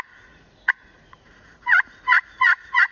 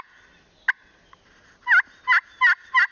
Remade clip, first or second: first